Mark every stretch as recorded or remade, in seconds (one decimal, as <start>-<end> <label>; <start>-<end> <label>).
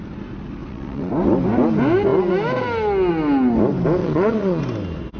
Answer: 0.0-0.6 recorded; 0.6-1.1 remade; 1.1-4.0 recorded; 4.0-4.6 remade; 4.6-5.2 recorded